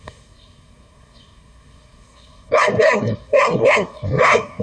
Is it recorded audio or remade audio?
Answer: remade